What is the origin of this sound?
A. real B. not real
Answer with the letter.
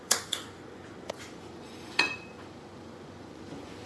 B